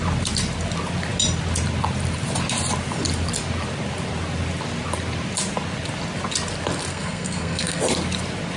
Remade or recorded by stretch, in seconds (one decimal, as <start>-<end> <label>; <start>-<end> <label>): 0.0-6.9 recorded; 6.9-7.8 remade; 7.8-8.6 recorded